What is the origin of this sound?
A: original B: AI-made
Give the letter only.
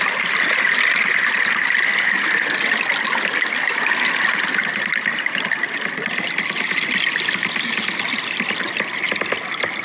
A